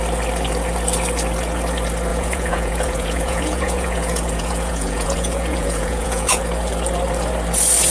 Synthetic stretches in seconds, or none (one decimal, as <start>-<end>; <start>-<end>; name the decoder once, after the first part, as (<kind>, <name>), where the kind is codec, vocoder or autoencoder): 2.1-6.4 (vocoder, Vocos)